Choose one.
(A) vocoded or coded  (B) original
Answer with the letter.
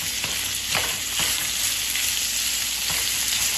B